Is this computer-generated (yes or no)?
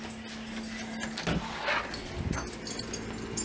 no